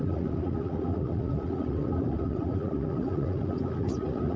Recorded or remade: remade